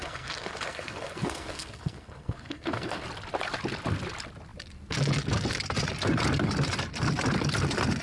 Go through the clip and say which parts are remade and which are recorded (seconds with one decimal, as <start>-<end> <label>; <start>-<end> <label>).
0.0-3.0 remade; 3.0-8.0 recorded